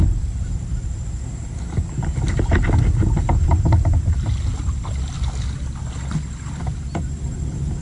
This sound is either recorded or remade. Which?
recorded